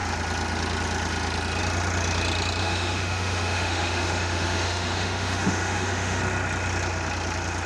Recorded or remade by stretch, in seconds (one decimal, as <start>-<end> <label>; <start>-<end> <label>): 0.0-2.6 recorded; 2.6-6.2 remade; 6.2-7.7 recorded